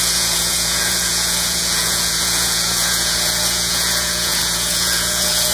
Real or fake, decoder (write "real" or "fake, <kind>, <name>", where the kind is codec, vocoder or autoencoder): fake, vocoder, Vocos